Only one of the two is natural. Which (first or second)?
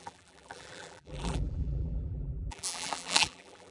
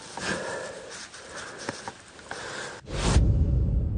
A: second